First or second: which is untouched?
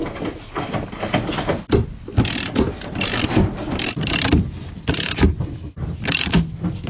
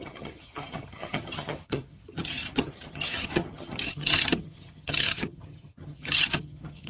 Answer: first